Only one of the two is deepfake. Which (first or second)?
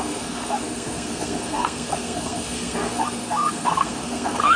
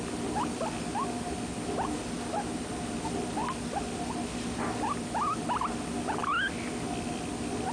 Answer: first